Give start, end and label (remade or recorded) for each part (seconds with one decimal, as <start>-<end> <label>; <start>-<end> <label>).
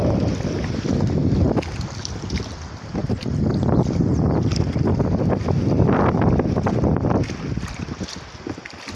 0.0-8.9 recorded